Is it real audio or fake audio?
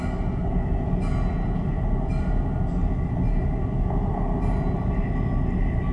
real